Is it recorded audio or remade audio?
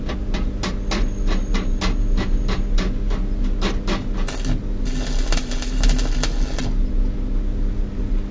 recorded